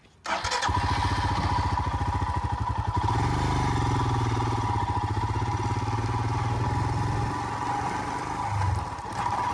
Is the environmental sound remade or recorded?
recorded